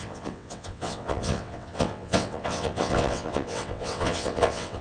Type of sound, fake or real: fake